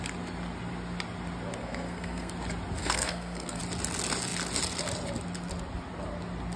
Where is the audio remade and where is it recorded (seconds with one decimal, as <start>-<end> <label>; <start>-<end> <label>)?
0.0-1.6 recorded; 1.6-2.3 remade; 2.3-2.8 recorded; 2.8-3.6 remade; 3.6-6.6 recorded